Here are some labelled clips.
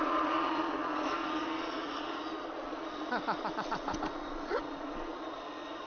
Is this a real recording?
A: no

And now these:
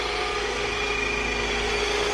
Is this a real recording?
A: yes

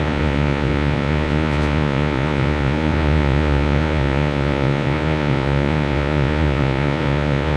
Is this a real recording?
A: no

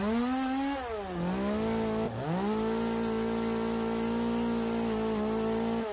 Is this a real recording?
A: yes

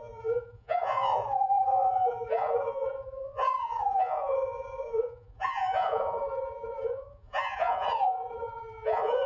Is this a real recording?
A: no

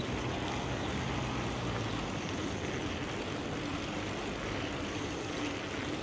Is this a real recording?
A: yes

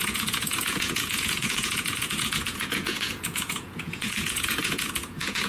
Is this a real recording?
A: no